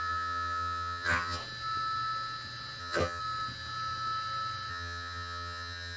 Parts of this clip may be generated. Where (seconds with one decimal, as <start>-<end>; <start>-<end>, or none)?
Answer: 0.0-1.4; 2.8-3.2; 4.7-6.0